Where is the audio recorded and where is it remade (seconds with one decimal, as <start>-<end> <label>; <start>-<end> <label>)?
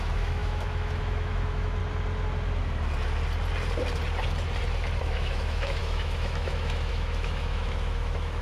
0.0-1.8 remade; 1.8-5.0 recorded; 5.0-8.4 remade